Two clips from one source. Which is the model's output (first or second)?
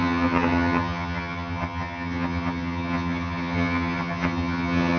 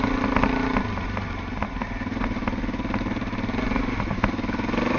first